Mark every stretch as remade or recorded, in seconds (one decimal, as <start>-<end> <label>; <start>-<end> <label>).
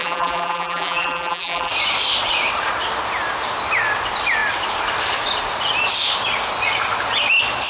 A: 0.0-1.7 remade; 1.7-7.7 recorded